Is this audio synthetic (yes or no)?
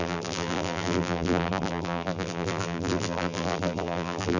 yes